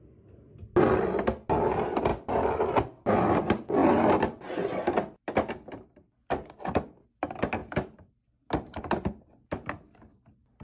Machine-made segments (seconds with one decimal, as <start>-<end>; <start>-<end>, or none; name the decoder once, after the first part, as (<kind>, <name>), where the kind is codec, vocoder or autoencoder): none